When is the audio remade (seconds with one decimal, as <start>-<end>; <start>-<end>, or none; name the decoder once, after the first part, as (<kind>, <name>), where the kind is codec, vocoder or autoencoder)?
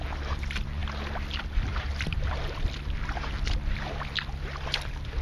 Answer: none